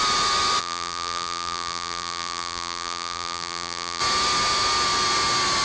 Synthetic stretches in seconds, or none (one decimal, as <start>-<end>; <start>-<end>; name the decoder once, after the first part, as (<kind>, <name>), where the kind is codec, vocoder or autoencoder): 0.6-4.0 (vocoder, BigVGAN v2)